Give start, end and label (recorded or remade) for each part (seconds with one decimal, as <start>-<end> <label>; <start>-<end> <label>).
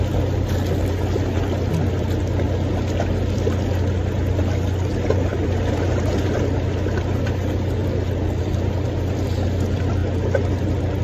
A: 0.0-5.3 recorded; 5.3-5.9 remade; 5.9-11.0 recorded